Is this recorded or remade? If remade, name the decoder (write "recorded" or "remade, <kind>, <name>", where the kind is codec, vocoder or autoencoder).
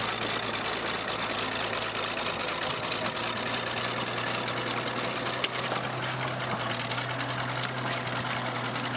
recorded